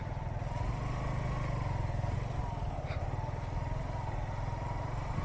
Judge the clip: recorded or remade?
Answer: recorded